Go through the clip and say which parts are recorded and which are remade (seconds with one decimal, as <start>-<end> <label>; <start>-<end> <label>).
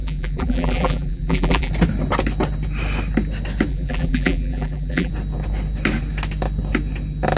0.0-1.7 remade; 1.7-3.7 recorded; 3.7-5.1 remade; 5.1-7.4 recorded